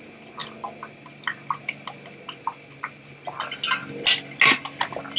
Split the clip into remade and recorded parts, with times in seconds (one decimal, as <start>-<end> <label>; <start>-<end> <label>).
0.0-5.2 recorded